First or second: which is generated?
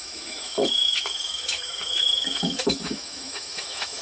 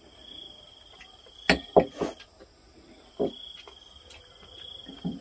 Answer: first